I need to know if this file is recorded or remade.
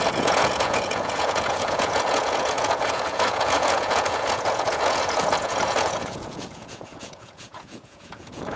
remade